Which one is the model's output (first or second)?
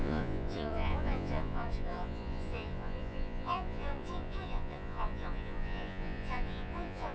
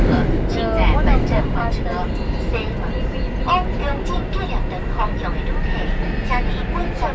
first